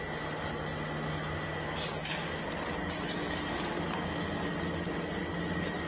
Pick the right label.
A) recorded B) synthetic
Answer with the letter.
A